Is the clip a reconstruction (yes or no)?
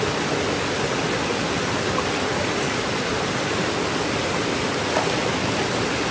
no